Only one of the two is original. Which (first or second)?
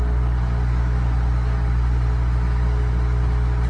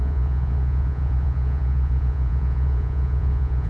first